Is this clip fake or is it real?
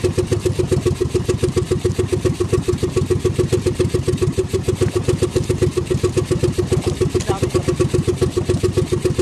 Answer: real